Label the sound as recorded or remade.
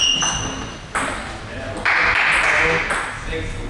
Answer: recorded